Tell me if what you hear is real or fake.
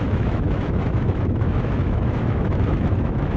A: fake